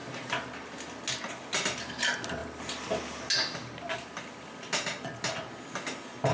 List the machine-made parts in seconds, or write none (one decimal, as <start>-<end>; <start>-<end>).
none